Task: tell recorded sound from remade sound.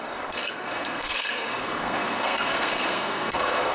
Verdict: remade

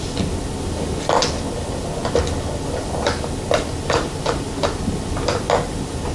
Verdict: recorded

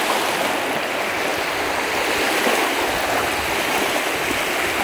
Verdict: recorded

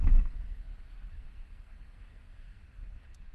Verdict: remade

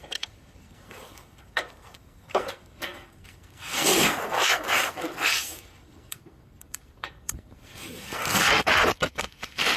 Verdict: remade